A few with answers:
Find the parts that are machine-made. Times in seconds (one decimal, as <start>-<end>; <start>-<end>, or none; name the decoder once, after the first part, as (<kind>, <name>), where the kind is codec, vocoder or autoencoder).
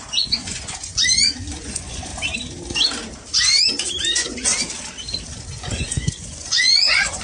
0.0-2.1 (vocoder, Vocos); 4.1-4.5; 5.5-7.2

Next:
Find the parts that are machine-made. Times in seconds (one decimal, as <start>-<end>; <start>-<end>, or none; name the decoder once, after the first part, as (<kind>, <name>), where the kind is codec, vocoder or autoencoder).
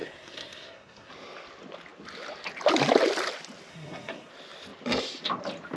0.0-1.1 (codec, SNAC); 3.7-4.3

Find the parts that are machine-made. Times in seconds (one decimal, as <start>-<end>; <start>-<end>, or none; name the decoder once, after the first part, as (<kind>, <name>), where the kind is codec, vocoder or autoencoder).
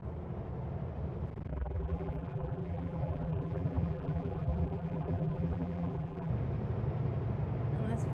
1.5-6.3 (vocoder, BigVGAN v2)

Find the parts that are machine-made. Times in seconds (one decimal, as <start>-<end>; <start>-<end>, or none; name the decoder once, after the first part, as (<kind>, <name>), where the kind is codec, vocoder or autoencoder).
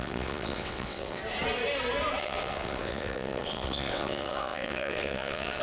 0.0-1.2 (vocoder, WaveNeXt); 2.2-5.6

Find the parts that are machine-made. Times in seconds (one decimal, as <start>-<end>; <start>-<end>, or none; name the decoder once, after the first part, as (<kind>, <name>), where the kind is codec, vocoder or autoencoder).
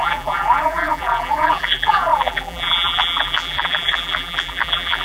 0.0-5.0 (vocoder, BigVGAN v2)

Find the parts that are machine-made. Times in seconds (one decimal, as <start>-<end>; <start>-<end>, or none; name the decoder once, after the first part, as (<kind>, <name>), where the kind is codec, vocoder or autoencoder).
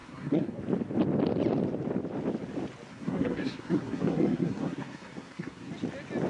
0.0-0.6 (codec, SNAC); 2.9-5.7